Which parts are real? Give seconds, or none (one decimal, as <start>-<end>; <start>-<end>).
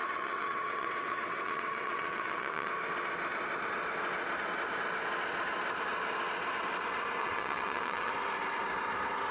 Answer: 2.7-7.2; 8.1-9.3